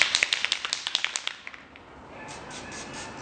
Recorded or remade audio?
recorded